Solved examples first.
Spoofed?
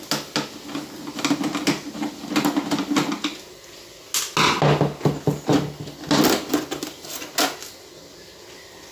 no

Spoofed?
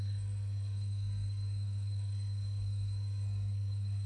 yes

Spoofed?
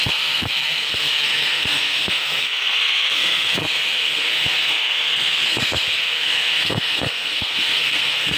yes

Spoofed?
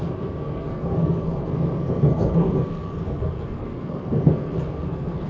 yes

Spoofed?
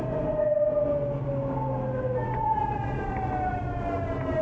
no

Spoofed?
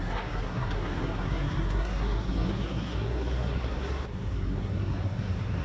yes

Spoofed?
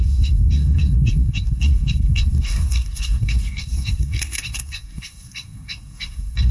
yes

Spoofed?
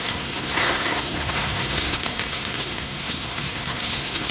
yes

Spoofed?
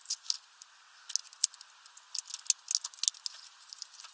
no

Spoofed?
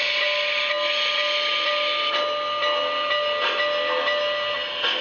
no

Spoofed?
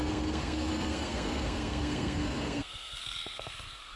yes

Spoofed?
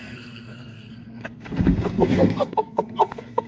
yes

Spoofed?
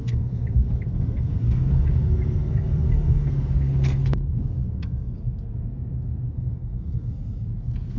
yes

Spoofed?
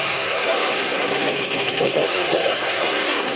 yes